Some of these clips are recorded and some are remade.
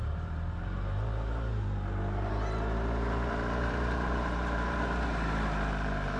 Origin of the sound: remade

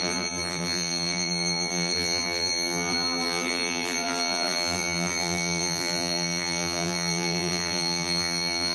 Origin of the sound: remade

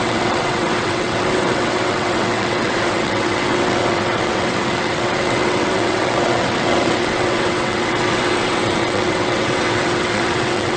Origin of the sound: remade